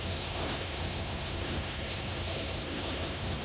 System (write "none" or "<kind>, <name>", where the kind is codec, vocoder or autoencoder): codec, SNAC